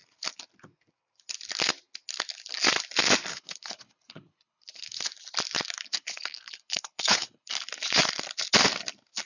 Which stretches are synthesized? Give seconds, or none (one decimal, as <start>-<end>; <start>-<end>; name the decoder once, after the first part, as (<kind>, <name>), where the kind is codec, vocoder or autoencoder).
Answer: 3.3-5.0 (codec, HILCodec); 5.9-7.5